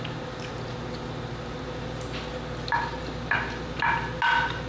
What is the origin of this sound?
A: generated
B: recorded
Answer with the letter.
B